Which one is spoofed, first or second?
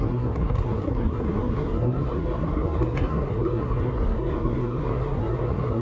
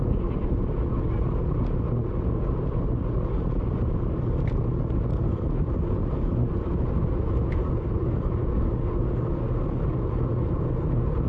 first